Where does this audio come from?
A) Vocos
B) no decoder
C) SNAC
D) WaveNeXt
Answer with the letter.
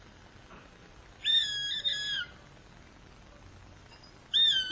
B